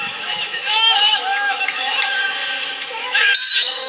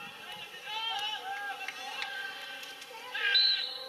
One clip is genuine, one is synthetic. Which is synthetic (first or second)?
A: first